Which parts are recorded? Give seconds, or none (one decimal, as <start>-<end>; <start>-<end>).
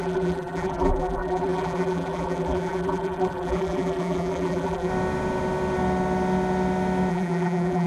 4.9-7.1